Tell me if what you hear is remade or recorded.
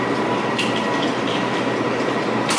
recorded